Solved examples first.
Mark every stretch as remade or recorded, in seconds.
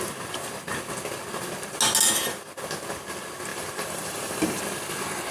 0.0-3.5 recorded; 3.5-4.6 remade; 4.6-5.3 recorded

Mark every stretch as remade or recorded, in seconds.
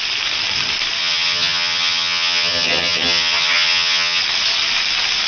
0.0-1.0 recorded; 1.0-4.2 remade; 4.2-5.3 recorded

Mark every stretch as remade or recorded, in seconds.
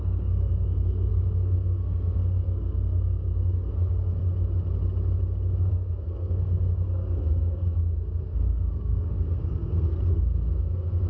0.0-4.2 remade; 4.2-5.7 recorded; 5.7-11.1 remade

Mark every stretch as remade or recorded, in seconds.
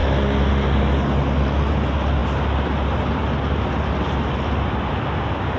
0.0-5.6 recorded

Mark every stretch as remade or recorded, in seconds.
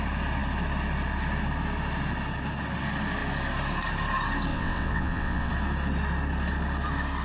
0.0-4.5 recorded; 4.5-5.5 remade; 5.5-7.2 recorded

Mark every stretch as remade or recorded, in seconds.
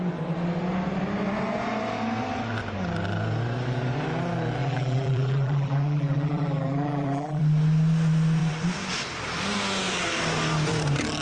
0.0-4.6 recorded; 4.6-7.4 remade; 7.4-11.2 recorded